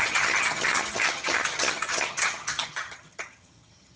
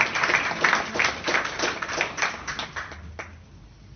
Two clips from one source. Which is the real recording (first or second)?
second